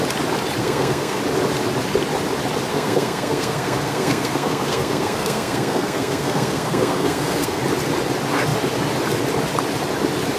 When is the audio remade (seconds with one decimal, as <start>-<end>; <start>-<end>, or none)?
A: 0.6-1.2; 2.7-7.6